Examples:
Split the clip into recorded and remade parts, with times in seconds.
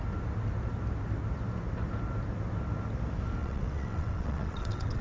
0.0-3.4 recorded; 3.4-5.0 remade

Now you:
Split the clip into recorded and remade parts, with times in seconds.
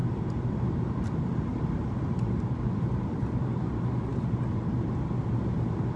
0.0-1.5 recorded; 1.5-3.4 remade; 3.4-6.0 recorded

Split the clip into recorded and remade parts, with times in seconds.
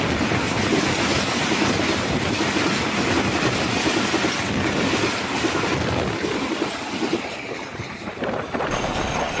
0.0-7.7 recorded; 7.7-9.4 remade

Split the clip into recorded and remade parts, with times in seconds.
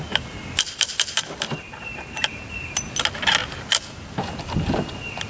0.0-5.3 recorded